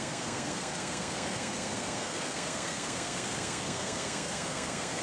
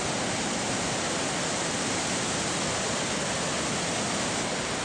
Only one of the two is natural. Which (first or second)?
second